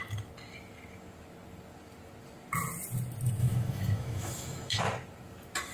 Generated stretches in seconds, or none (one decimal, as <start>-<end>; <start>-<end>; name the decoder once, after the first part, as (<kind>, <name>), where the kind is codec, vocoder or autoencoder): 3.4-4.8 (autoencoder, DAC-VAE)